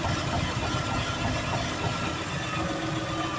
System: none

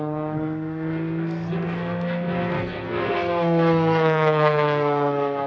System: codec, SNAC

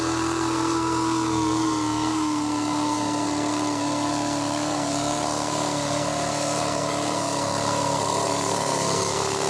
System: codec, SNAC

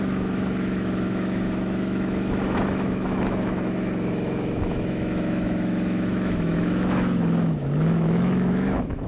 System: autoencoder, DAC-VAE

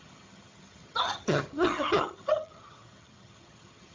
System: vocoder, HiFi-GAN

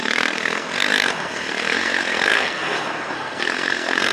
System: codec, SNAC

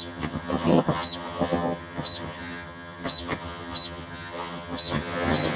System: vocoder, HiFi-GAN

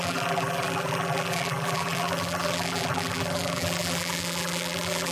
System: vocoder, BigVGAN v2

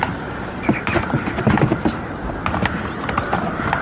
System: none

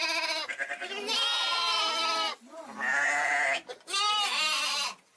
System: none